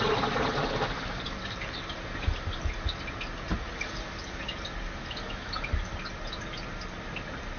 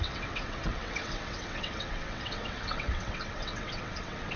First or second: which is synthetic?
second